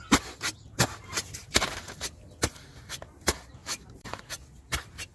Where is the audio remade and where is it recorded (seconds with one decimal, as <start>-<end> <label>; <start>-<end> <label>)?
0.0-3.6 recorded; 3.6-4.2 remade; 4.2-5.1 recorded